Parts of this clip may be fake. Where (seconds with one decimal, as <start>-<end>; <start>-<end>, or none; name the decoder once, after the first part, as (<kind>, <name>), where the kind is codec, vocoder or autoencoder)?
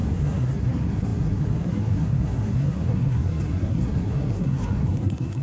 0.0-5.4 (codec, SNAC)